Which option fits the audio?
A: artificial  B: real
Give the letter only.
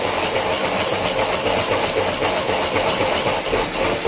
B